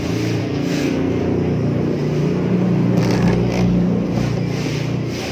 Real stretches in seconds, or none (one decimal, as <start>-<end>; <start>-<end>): 0.0-0.4; 1.2-5.3